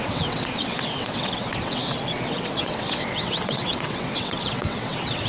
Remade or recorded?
remade